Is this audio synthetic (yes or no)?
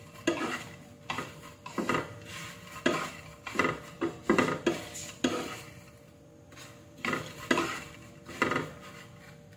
no